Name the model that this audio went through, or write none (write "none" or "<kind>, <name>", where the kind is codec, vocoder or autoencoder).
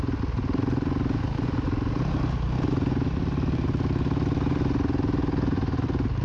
none